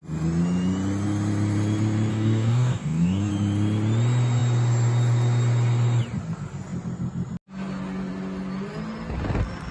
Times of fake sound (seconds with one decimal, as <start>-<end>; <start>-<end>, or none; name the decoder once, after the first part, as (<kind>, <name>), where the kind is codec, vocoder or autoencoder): 2.1-3.3 (codec, DAC)